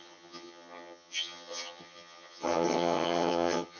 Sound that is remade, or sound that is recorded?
remade